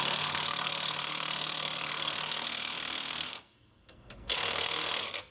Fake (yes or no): yes